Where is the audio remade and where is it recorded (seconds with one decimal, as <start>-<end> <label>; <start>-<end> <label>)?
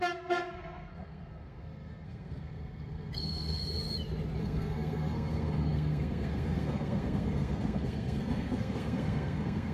0.0-3.6 remade; 3.6-4.4 recorded; 4.4-9.7 remade